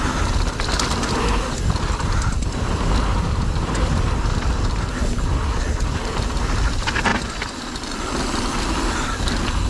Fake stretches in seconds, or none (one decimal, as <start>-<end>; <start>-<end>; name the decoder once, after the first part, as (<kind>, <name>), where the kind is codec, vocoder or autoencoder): 3.1-3.9 (vocoder, BigVGAN v2)